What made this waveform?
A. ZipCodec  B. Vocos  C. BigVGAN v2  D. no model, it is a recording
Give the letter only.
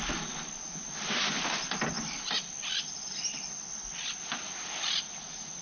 D